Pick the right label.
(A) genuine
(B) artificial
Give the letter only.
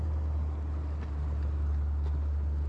A